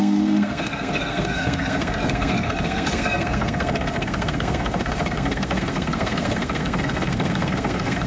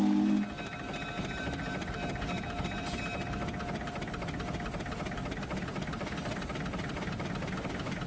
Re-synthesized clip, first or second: first